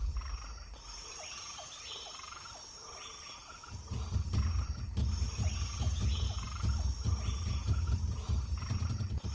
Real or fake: real